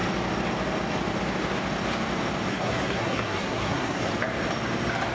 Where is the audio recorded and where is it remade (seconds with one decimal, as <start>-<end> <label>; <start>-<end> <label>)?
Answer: 0.0-2.5 recorded; 2.5-4.1 remade; 4.1-5.1 recorded